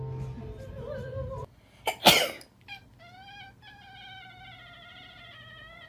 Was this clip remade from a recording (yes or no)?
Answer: no